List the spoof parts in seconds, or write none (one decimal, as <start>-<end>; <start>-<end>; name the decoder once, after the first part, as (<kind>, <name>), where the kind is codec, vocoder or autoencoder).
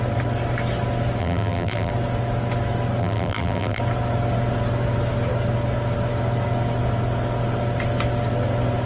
1.2-1.9 (vocoder, BigVGAN v2); 3.0-3.8